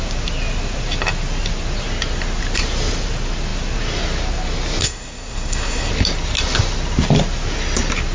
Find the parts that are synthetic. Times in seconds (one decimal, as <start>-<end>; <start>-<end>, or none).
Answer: 4.8-5.9